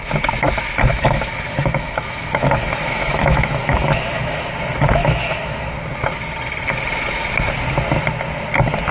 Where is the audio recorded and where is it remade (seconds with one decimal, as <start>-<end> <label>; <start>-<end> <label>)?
0.0-0.9 recorded; 0.9-4.5 remade; 4.5-5.0 recorded; 5.0-5.7 remade; 5.7-8.9 recorded